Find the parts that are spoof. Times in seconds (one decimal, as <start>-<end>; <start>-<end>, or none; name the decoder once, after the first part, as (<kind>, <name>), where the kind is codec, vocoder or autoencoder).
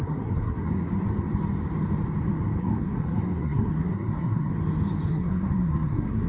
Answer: 0.0-0.9 (codec, SNAC); 2.6-4.5; 5.1-6.3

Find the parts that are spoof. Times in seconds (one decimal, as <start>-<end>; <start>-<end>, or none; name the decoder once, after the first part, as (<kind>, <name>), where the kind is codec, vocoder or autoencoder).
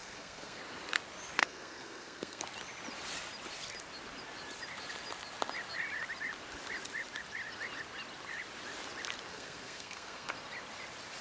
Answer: 0.0-0.6 (codec, SNAC); 1.4-2.4; 9.3-10.3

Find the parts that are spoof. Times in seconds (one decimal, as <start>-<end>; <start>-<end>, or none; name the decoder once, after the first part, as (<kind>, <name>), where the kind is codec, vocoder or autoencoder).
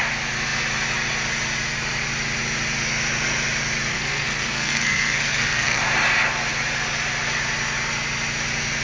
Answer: 3.9-5.8 (codec, SNAC)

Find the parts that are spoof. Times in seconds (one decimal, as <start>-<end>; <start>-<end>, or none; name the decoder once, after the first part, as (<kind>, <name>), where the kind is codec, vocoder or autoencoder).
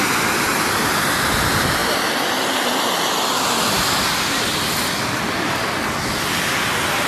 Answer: none